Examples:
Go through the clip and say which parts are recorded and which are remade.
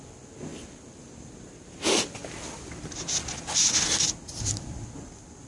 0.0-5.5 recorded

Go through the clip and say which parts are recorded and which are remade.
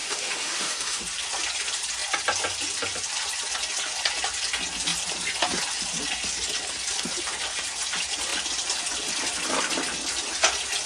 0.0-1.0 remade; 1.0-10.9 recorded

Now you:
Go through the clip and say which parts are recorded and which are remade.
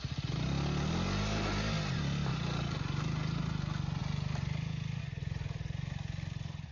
0.0-6.7 recorded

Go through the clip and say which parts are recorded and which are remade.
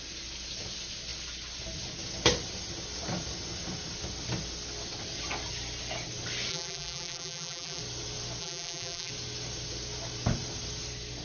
0.0-6.5 recorded; 6.5-7.8 remade; 7.8-8.4 recorded; 8.4-9.1 remade; 9.1-11.2 recorded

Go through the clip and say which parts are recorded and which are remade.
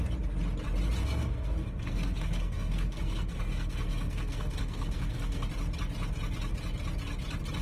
0.0-1.0 recorded; 1.0-5.5 remade; 5.5-7.6 recorded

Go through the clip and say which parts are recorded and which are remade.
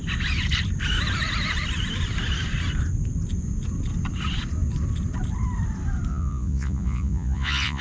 0.0-6.1 recorded; 6.1-7.8 remade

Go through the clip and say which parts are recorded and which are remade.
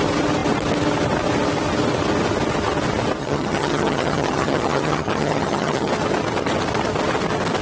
0.0-3.2 recorded; 3.2-5.9 remade; 5.9-7.6 recorded